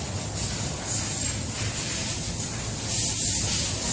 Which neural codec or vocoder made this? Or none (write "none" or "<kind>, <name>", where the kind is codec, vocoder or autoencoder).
none